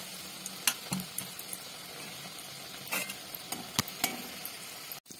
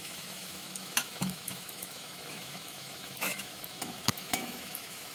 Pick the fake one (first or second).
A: second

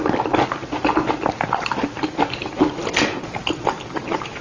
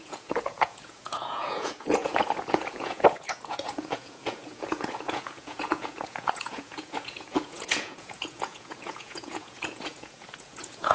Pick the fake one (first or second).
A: second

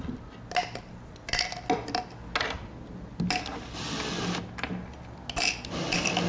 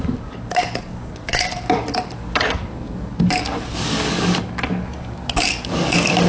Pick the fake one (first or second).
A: second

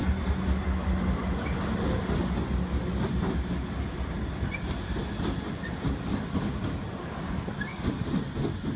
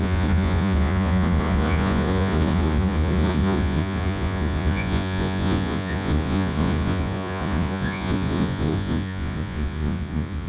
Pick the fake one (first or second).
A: second